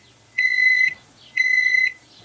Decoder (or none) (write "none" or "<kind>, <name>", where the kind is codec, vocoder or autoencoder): vocoder, Vocos